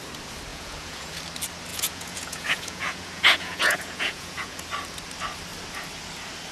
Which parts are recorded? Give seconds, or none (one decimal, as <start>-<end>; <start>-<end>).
0.0-0.5; 1.2-1.7; 4.6-6.5